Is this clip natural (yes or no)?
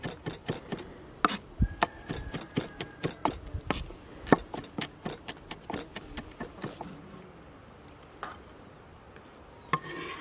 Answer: yes